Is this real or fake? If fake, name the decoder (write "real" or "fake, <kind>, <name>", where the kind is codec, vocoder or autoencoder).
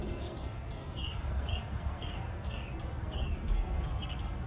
fake, codec, SNAC